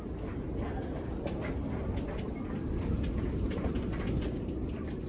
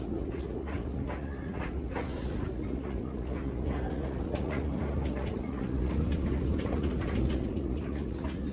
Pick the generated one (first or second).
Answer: second